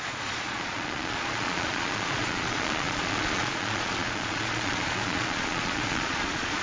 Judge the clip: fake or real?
fake